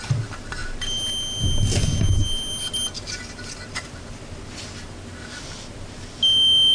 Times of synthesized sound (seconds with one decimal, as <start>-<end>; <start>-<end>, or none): none